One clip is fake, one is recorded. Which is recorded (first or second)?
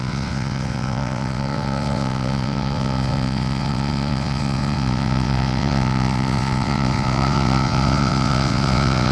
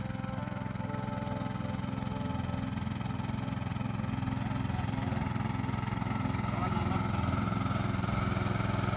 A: second